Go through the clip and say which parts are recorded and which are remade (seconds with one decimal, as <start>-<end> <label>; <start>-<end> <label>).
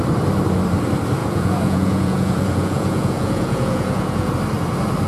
0.0-1.2 recorded; 1.2-4.3 remade; 4.3-5.1 recorded